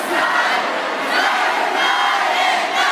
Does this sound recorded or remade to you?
recorded